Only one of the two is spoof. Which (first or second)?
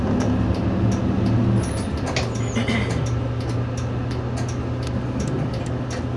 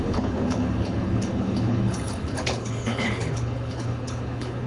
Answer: second